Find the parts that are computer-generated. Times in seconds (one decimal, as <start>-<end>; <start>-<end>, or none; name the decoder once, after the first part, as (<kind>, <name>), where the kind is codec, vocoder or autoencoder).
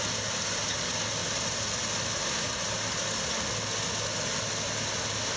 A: none